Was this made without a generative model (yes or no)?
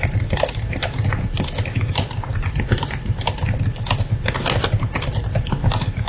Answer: yes